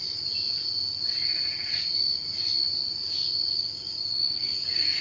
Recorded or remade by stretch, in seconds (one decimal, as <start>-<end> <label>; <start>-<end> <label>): 0.0-3.5 recorded; 3.5-5.0 remade